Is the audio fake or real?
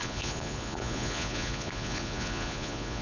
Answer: fake